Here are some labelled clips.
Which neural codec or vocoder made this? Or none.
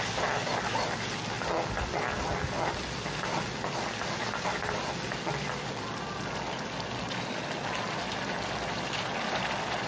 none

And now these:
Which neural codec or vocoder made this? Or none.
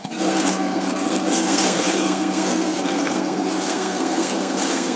codec, SNAC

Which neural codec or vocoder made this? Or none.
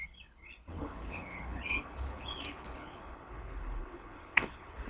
codec, HILCodec